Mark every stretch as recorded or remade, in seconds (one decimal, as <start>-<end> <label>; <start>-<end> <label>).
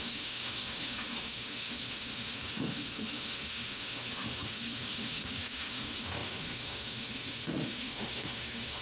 0.0-8.8 remade